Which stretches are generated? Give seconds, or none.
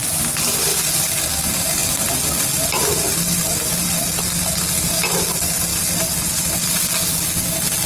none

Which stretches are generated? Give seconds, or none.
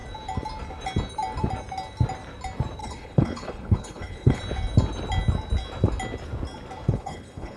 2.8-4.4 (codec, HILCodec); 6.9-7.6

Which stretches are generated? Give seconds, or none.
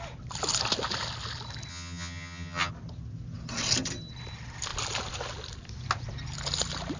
1.7-2.7 (vocoder, HiFi-GAN)